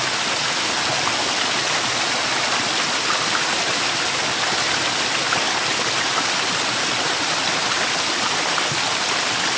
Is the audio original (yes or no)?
yes